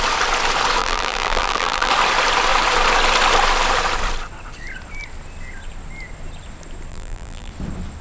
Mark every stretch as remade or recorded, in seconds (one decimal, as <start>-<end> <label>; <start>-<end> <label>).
0.0-0.8 recorded; 0.8-1.9 remade; 1.9-6.9 recorded; 6.9-7.5 remade; 7.5-8.0 recorded